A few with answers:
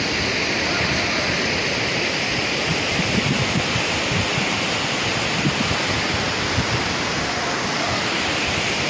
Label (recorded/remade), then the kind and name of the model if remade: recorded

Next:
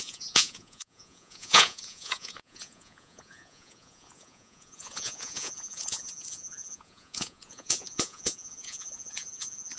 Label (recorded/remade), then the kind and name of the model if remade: remade, vocoder, Vocos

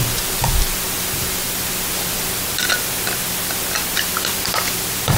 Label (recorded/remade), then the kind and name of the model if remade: recorded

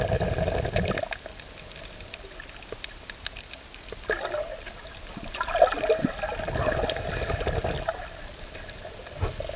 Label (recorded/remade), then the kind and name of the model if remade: recorded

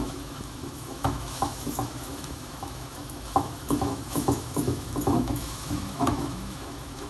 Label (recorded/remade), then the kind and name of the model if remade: remade, autoencoder, DAC-VAE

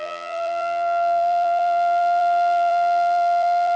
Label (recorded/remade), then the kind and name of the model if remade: remade, vocoder, BigVGAN v2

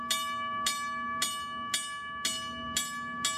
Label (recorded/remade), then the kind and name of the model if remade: recorded